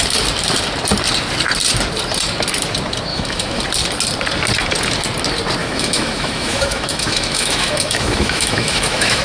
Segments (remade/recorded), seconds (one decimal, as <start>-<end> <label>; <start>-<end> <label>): 0.0-3.1 recorded; 3.1-3.6 remade; 3.6-5.6 recorded; 5.6-9.2 remade